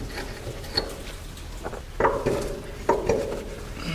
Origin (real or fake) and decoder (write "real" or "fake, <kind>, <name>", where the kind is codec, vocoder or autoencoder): real